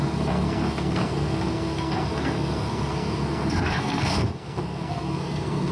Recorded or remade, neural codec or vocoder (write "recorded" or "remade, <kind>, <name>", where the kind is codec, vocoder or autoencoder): remade, codec, SNAC